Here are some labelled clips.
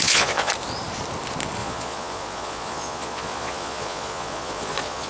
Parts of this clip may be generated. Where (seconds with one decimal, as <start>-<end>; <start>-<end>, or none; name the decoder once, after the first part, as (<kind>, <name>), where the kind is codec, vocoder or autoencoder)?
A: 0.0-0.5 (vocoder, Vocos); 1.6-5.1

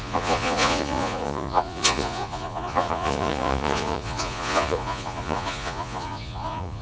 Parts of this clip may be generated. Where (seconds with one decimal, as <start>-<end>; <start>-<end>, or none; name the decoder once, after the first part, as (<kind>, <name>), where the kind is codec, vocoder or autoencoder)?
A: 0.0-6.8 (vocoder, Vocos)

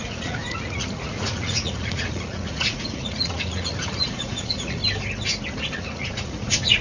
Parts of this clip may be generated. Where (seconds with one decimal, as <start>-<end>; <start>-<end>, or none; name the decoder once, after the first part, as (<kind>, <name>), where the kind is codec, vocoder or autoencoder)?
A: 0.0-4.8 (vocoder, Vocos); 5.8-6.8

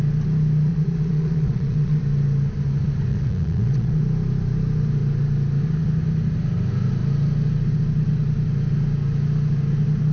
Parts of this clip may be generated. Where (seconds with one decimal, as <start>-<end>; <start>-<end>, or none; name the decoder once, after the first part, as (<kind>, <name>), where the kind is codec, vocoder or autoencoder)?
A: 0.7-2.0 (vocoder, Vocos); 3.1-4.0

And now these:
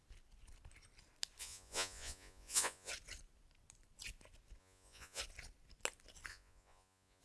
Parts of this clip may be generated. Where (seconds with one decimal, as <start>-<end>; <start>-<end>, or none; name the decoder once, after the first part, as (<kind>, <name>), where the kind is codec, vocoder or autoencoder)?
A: 1.4-2.9 (vocoder, Vocos); 4.6-5.2; 6.3-7.2

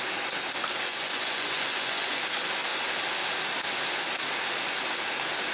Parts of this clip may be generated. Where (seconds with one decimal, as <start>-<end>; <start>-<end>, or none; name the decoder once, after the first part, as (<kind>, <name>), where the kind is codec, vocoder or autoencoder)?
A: 0.9-2.2 (vocoder, Vocos)

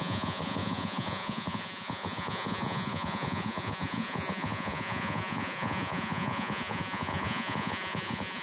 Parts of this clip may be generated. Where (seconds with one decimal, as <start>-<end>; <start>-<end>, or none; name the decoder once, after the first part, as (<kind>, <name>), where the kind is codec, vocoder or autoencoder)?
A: 0.0-8.4 (vocoder, Vocos)